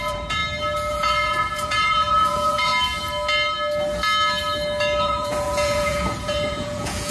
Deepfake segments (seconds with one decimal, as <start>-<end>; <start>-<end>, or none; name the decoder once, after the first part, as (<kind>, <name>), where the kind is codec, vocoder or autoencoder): 0.0-0.4 (vocoder, Vocos); 0.9-2.7; 5.0-7.1